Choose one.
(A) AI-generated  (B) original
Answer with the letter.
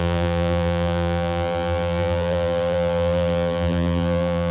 A